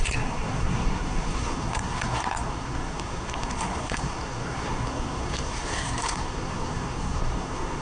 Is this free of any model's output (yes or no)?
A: no